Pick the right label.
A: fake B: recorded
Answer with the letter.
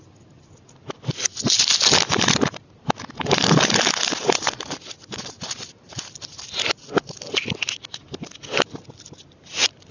B